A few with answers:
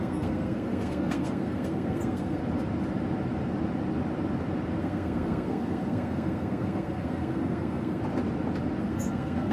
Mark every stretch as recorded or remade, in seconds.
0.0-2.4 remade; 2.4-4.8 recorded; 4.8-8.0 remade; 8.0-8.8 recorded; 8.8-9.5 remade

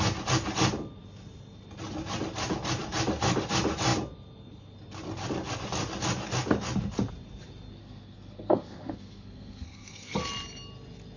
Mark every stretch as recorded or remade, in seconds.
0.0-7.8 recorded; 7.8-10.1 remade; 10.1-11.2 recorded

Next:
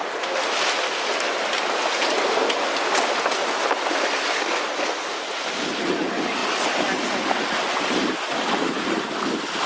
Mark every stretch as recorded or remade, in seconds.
0.0-9.7 recorded